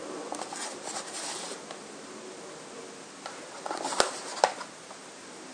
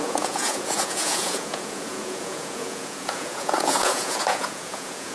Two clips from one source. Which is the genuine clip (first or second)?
first